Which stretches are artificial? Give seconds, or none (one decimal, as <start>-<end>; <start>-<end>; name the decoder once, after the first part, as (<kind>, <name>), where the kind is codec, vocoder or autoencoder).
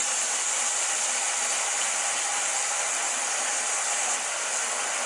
none